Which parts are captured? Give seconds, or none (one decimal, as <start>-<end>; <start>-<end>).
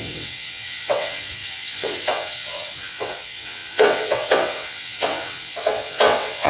none